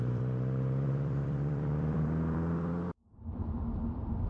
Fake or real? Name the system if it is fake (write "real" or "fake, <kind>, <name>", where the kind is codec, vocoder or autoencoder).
fake, vocoder, BigVGAN v2